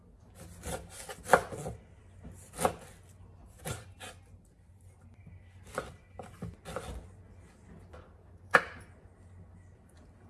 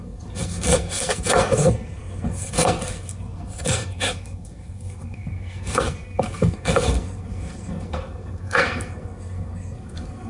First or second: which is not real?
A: second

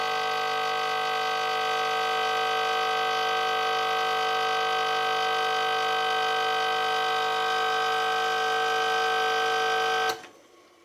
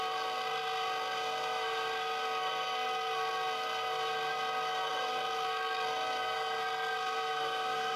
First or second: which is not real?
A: second